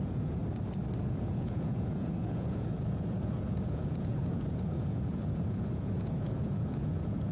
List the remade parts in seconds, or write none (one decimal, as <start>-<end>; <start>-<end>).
0.0-0.4; 1.0-7.3